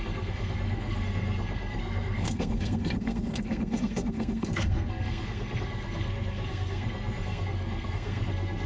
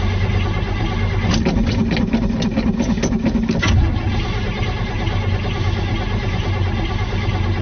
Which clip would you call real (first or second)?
second